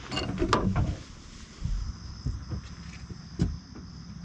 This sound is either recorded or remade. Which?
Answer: recorded